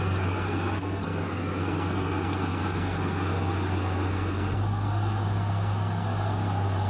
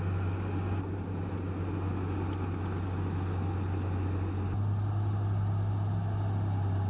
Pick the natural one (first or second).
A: second